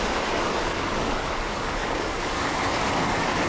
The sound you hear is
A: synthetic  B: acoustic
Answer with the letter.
A